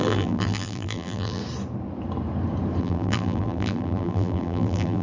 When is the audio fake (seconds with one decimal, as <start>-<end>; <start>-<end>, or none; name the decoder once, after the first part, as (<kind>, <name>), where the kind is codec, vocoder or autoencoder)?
0.0-1.4 (vocoder, BigVGAN v2); 2.8-5.0